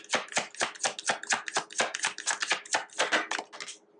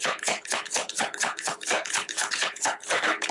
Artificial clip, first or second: second